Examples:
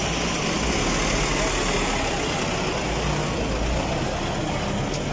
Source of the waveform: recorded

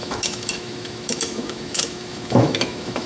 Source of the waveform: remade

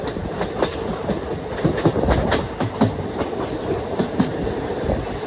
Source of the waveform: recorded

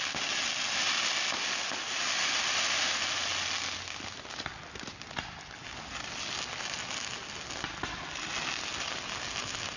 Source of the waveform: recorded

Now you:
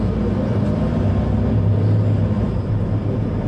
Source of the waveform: recorded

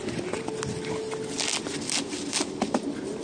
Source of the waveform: recorded